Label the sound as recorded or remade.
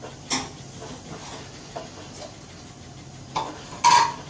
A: recorded